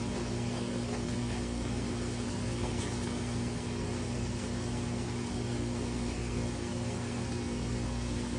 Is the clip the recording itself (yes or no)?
no